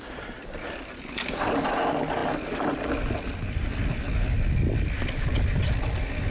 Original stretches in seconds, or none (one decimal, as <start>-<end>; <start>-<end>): 0.0-6.3